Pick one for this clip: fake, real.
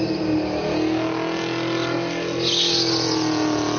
real